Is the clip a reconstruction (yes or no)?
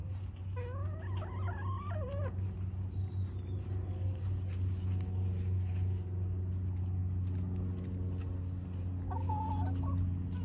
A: no